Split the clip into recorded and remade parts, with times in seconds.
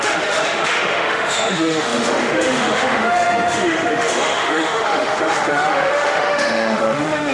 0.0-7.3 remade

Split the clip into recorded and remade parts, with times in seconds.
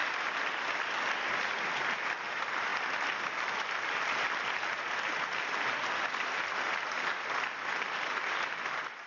0.0-9.1 recorded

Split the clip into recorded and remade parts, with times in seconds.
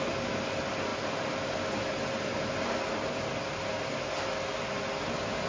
0.0-5.5 recorded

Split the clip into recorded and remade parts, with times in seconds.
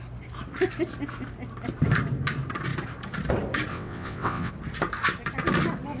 0.0-3.7 recorded; 3.7-4.5 remade; 4.5-6.0 recorded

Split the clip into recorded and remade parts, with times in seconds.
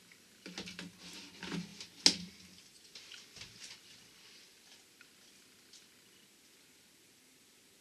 0.0-7.8 recorded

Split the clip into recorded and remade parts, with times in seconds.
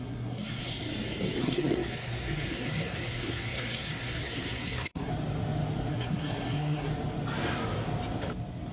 0.0-0.7 remade; 0.7-1.4 recorded; 1.4-5.1 remade; 5.1-5.9 recorded; 5.9-6.9 remade; 6.9-8.7 recorded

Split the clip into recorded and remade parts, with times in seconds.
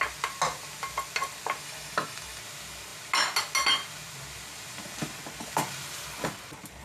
0.0-1.6 recorded; 1.6-2.4 remade; 2.4-6.8 recorded